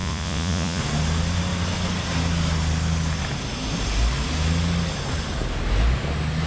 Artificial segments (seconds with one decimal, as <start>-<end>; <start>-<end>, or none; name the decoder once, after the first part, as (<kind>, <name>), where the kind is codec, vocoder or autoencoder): 0.0-0.8 (vocoder, Vocos)